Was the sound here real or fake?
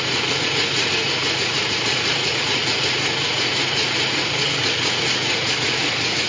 fake